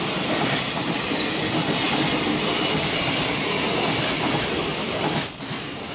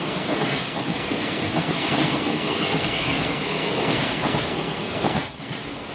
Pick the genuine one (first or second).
first